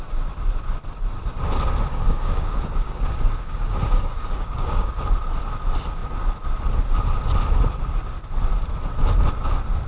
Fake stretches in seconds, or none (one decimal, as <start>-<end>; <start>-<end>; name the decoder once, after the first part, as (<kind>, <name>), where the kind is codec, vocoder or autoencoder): 1.9-4.9 (codec, DAC)